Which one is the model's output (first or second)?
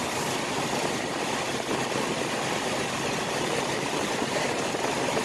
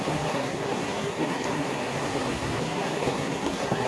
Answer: second